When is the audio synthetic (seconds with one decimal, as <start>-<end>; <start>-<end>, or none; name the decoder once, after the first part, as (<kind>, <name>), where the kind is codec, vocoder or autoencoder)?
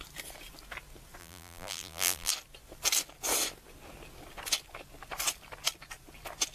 1.2-2.3 (vocoder, BigVGAN v2)